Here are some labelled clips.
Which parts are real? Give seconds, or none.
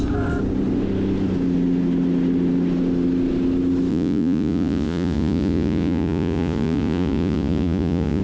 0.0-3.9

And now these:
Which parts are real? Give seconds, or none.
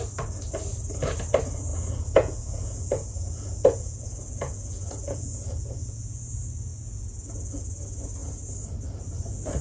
0.0-1.7; 6.2-6.7; 7.6-9.6